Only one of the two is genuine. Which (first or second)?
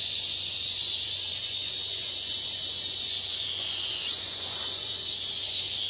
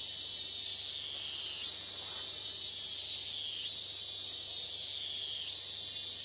second